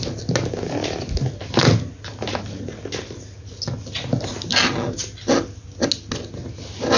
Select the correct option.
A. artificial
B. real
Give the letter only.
B